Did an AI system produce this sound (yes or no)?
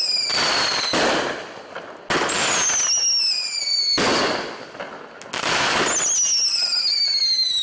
no